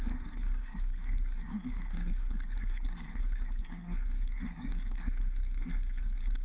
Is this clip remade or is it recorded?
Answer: remade